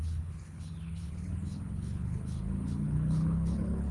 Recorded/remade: remade